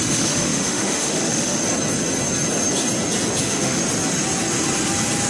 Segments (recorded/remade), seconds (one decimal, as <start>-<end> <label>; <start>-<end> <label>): 0.0-1.6 remade; 1.6-3.4 recorded; 3.4-3.8 remade; 3.8-5.3 recorded